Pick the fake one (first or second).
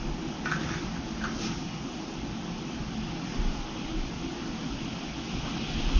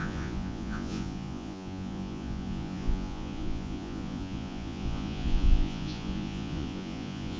second